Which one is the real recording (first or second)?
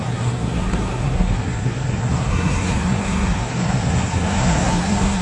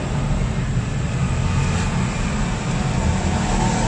second